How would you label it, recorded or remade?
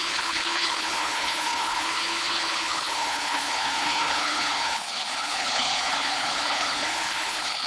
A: remade